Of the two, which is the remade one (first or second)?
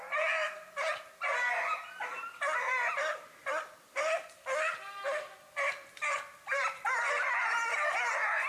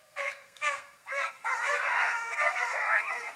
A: second